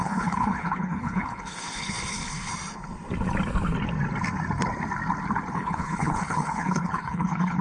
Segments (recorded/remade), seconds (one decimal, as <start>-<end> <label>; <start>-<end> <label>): 0.0-2.5 remade; 2.5-5.5 recorded; 5.5-7.6 remade